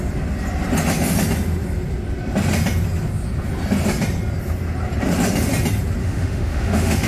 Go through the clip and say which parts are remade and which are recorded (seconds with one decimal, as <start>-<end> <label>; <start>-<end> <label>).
0.0-6.0 recorded; 6.0-7.1 remade